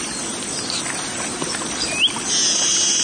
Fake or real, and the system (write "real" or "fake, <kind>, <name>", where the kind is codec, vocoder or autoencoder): real